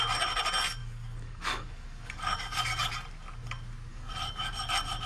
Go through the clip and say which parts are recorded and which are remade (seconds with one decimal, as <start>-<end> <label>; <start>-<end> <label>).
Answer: 0.0-0.8 recorded; 0.8-2.9 remade; 2.9-3.9 recorded; 3.9-4.5 remade; 4.5-5.1 recorded